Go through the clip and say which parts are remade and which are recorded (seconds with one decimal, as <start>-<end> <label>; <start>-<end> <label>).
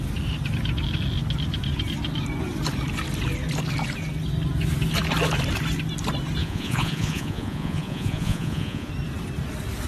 0.0-6.4 recorded; 6.4-8.9 remade; 8.9-9.9 recorded